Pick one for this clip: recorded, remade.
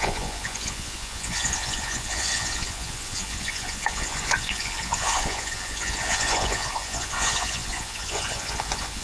remade